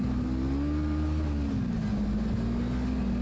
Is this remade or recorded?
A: recorded